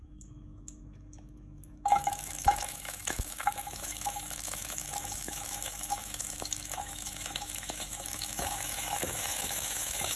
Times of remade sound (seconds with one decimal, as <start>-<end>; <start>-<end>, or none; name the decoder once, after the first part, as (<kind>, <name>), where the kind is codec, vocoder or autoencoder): 0.0-10.2 (autoencoder, DAC-VAE)